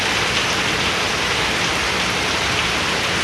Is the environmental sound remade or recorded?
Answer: recorded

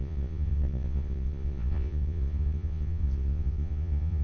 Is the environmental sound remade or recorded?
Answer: remade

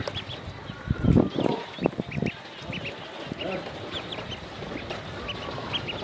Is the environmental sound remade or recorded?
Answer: recorded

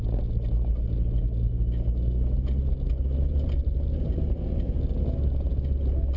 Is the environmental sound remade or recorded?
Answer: recorded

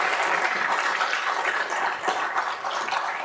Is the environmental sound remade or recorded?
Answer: recorded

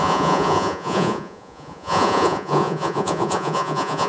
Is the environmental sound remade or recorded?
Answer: remade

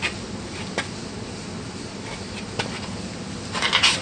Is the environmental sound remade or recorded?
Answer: recorded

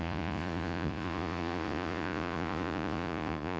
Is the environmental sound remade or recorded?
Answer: remade